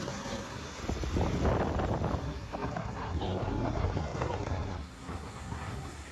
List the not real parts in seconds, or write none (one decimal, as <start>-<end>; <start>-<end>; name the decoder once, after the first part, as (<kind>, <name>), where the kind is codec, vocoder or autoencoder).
0.0-0.8 (codec, SNAC); 2.2-6.1